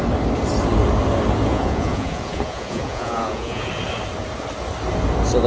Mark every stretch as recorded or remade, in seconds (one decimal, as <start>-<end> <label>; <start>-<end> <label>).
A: 0.0-1.5 recorded; 1.5-3.7 remade; 3.7-5.5 recorded